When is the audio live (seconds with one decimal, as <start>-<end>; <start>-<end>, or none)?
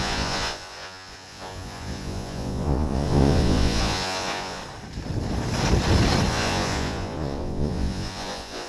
4.6-6.3